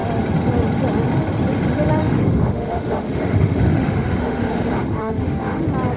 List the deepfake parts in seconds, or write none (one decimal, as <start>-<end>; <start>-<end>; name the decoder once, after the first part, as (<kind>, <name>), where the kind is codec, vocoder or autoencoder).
2.0-5.6 (autoencoder, DAC-VAE)